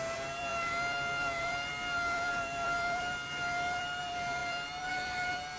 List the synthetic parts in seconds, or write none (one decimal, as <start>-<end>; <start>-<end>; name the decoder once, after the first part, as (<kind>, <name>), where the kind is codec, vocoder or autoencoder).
0.0-5.6 (vocoder, BigVGAN v2)